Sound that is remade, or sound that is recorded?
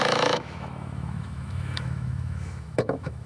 remade